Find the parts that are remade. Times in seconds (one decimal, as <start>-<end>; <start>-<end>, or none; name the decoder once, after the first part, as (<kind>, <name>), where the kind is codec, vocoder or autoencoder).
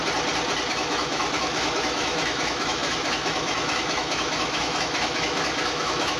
0.7-6.2 (autoencoder, DAC-VAE)